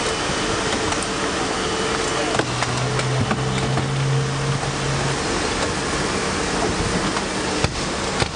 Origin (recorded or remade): recorded